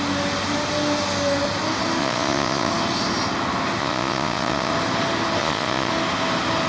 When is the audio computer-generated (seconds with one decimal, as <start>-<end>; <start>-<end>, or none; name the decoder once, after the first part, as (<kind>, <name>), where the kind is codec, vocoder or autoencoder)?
2.0-2.7 (vocoder, Vocos); 3.8-4.7; 5.4-5.9